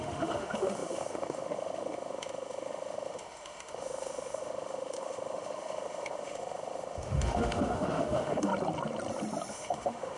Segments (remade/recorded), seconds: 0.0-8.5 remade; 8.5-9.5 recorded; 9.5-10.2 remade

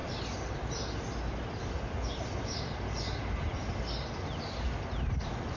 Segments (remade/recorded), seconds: 0.0-5.6 recorded